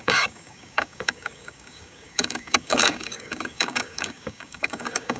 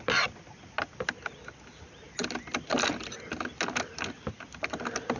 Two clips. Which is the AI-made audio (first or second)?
first